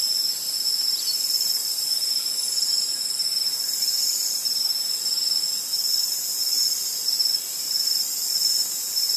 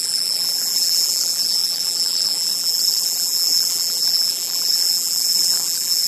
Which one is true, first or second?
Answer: first